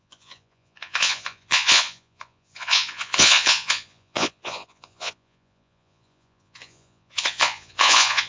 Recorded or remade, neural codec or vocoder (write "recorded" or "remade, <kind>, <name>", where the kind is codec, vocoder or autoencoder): remade, vocoder, Vocos